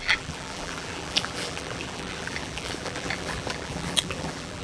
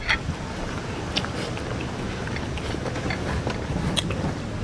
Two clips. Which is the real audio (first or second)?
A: second